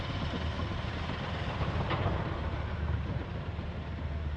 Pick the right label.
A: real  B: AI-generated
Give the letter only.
B